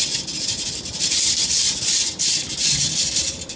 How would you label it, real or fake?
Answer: real